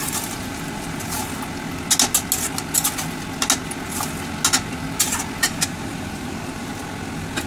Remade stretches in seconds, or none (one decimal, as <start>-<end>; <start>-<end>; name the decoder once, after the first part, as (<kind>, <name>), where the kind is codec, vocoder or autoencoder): 0.0-1.2 (vocoder, BigVGAN v2); 5.4-6.7